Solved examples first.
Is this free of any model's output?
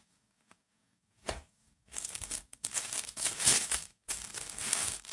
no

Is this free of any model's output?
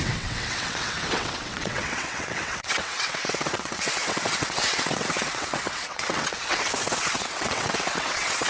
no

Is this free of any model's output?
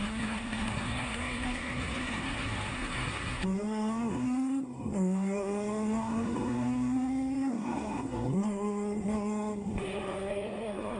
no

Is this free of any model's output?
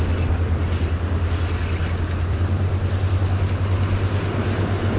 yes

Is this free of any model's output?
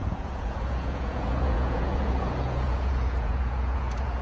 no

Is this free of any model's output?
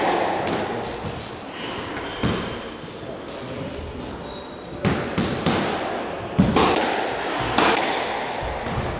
yes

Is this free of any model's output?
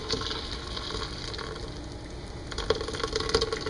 yes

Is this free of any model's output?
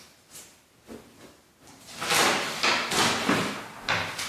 yes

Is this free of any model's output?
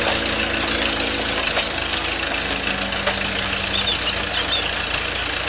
yes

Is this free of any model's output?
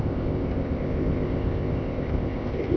no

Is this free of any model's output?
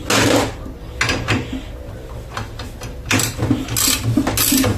yes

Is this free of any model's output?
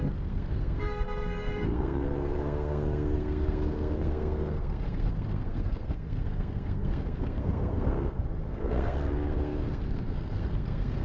no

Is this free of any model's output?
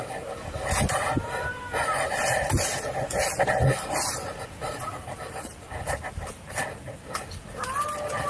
yes